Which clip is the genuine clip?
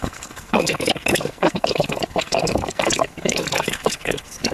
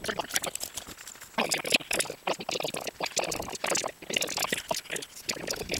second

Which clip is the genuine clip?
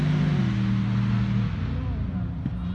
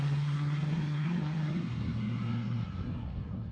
first